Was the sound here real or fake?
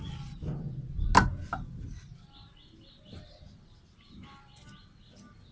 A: real